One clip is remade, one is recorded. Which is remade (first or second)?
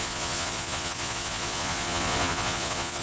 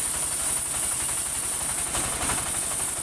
first